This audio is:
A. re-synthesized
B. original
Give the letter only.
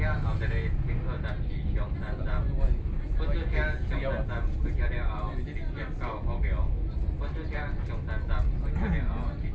B